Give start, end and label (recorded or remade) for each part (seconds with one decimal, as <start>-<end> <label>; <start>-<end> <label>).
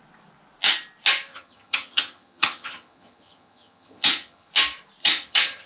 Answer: 0.0-1.3 recorded; 1.3-4.5 remade; 4.5-5.0 recorded; 5.0-5.7 remade